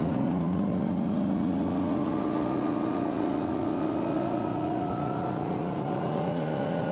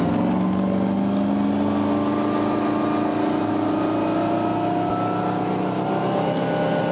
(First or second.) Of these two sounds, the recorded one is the second